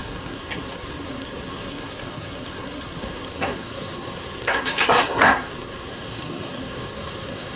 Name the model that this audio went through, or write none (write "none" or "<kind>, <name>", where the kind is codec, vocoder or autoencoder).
codec, SNAC